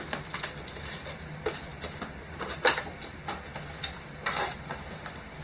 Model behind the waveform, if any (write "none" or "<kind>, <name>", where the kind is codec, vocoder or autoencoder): none